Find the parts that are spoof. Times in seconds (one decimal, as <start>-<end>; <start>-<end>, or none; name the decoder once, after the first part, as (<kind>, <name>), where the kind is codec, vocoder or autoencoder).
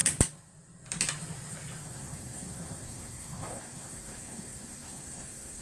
1.8-5.6 (codec, SNAC)